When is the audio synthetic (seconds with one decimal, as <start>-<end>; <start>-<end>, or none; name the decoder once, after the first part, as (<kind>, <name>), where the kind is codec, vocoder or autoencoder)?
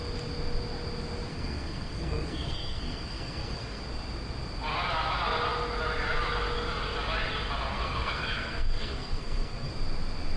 1.3-3.8 (codec, SNAC); 7.7-9.7